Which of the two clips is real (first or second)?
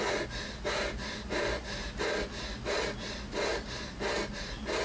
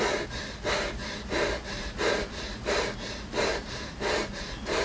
first